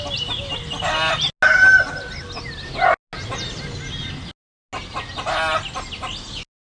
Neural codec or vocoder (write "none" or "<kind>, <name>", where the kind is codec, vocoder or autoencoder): none